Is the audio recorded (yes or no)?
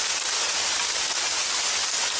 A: yes